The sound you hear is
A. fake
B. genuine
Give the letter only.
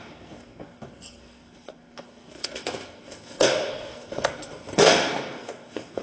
A